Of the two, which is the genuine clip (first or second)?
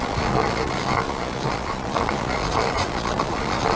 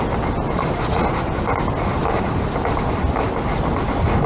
second